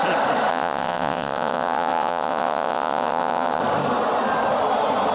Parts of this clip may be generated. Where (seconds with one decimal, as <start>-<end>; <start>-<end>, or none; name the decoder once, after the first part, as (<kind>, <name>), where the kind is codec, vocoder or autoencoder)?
0.5-3.6 (vocoder, WaveNeXt)